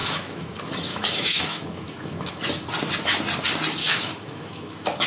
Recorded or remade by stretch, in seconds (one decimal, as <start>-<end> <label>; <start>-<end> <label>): 0.0-0.5 remade; 0.5-0.9 recorded; 0.9-2.4 remade; 2.4-3.8 recorded; 3.8-5.1 remade